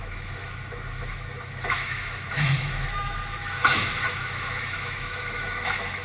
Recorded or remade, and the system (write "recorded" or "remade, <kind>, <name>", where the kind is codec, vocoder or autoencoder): remade, autoencoder, DAC-VAE